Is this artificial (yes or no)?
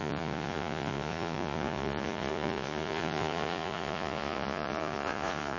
yes